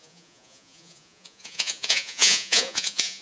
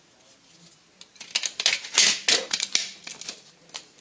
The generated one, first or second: first